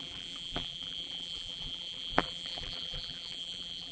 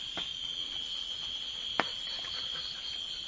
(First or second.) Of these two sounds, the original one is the second